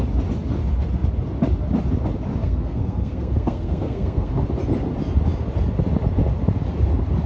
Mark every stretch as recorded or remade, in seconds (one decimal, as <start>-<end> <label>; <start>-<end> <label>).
0.0-2.4 recorded; 2.4-4.3 remade; 4.3-7.3 recorded